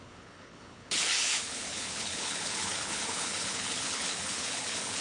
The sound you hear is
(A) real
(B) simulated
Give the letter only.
B